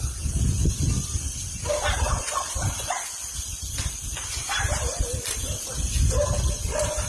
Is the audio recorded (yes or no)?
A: yes